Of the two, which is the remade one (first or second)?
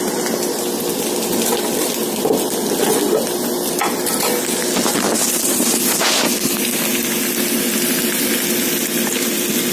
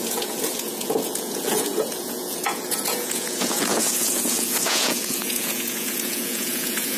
second